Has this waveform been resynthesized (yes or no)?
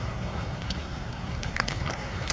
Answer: yes